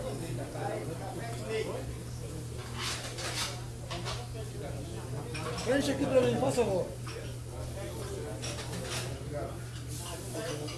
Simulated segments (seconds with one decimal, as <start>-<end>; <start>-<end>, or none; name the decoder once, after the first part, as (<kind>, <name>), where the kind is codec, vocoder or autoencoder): none

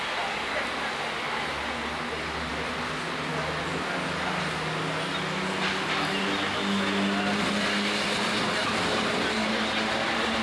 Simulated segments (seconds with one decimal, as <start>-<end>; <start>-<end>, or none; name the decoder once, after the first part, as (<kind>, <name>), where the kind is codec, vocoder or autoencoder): none

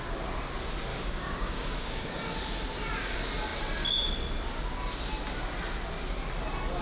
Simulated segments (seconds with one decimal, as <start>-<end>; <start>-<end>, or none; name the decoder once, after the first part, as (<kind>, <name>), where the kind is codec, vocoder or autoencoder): 0.9-2.2 (codec, DAC)

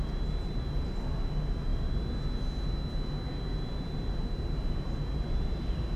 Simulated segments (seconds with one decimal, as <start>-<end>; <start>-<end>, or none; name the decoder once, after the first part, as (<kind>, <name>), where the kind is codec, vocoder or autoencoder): none

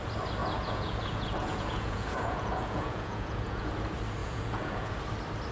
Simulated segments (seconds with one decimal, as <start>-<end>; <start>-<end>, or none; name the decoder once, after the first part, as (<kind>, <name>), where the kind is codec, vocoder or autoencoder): 0.4-3.7 (vocoder, Vocos); 4.2-4.9

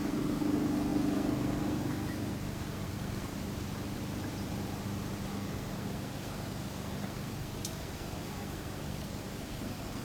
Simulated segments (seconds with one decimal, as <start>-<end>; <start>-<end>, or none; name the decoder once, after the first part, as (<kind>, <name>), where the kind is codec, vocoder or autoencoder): 0.0-3.3 (codec, SNAC); 5.3-10.0